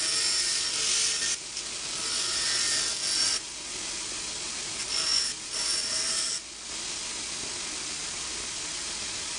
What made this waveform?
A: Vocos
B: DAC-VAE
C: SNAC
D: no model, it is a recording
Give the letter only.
D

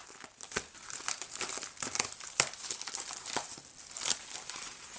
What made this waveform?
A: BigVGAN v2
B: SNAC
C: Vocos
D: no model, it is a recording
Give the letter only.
D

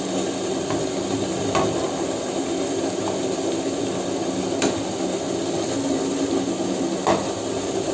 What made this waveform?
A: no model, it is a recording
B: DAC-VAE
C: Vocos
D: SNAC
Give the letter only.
A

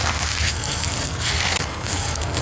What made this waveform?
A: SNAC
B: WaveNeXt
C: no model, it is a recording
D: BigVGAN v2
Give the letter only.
A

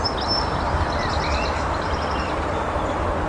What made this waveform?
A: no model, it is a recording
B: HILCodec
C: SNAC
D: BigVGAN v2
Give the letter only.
A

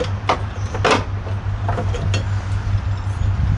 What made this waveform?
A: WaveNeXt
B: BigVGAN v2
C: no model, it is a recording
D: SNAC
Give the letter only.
C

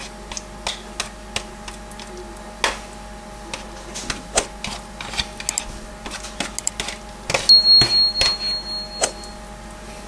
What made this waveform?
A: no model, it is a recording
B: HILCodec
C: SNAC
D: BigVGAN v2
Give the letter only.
A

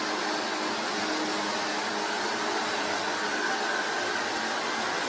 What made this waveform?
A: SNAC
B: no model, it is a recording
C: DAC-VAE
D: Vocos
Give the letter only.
B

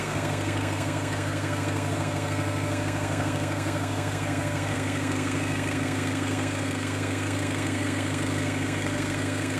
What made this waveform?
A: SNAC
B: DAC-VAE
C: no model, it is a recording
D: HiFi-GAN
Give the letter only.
A